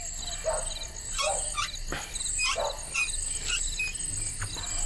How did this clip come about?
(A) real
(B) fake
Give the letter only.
A